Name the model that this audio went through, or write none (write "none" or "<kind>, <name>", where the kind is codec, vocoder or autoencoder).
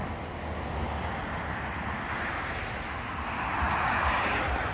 none